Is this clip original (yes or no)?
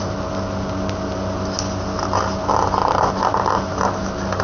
yes